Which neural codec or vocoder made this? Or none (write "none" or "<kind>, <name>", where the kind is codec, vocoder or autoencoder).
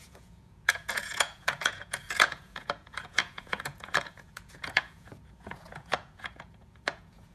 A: vocoder, Vocos